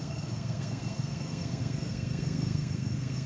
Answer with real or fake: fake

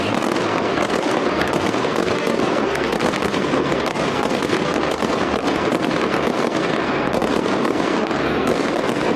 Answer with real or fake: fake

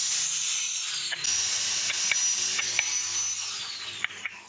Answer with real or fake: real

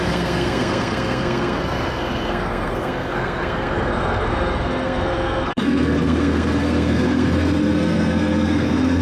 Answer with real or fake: fake